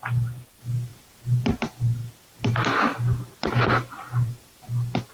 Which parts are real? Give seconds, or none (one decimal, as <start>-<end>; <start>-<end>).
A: none